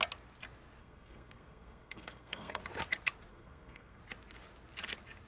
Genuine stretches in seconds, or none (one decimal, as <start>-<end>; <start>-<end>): 0.0-0.8; 2.6-3.3; 4.0-5.3